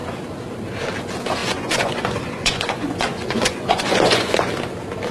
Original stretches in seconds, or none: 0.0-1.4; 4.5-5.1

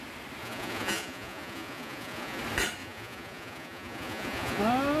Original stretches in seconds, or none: 0.0-0.4; 2.4-2.8; 4.6-5.0